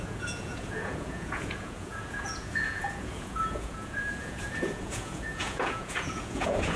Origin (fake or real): fake